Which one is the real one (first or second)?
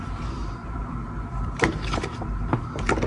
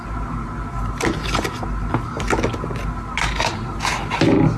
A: second